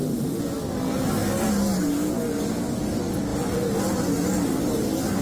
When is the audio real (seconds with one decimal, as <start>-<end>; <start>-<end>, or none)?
0.0-5.2

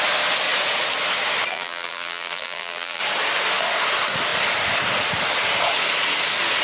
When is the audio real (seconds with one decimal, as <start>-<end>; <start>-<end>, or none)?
0.0-1.5; 3.0-6.6

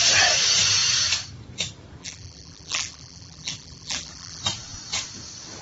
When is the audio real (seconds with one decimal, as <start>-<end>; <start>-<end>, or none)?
0.0-2.0; 4.4-5.6